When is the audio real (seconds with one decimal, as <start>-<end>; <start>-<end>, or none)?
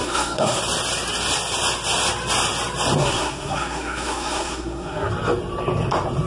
0.6-3.0; 5.1-6.3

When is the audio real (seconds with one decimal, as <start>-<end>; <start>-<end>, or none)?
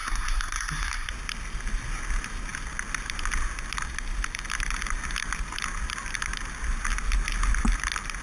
1.1-8.2